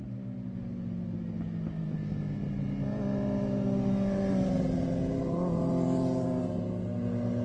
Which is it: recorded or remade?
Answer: recorded